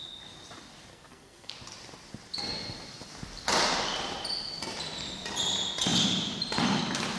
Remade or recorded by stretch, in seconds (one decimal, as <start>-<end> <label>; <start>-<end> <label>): 0.0-0.9 recorded; 0.9-1.5 remade; 1.5-7.2 recorded